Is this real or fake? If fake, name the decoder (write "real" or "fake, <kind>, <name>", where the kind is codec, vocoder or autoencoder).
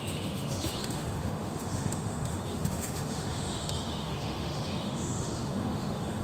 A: fake, autoencoder, DAC-VAE